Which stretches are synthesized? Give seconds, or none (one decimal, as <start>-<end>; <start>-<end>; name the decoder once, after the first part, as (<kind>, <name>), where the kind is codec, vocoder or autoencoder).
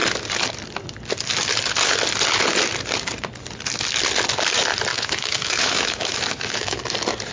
4.9-6.8 (autoencoder, DAC-VAE)